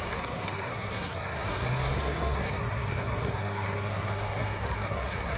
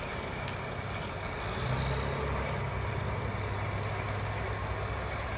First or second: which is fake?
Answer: first